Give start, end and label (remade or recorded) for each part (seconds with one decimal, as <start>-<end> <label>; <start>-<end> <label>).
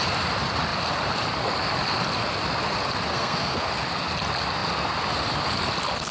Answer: 0.0-3.1 recorded; 3.1-3.7 remade; 3.7-6.1 recorded